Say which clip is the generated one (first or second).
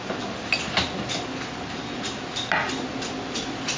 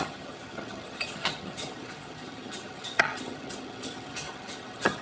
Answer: second